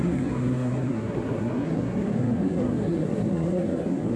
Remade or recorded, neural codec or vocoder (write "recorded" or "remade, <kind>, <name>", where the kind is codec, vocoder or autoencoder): remade, codec, SNAC